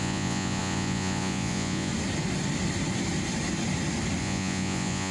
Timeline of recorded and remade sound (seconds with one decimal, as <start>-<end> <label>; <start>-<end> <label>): 0.0-1.9 remade; 1.9-4.2 recorded; 4.2-5.1 remade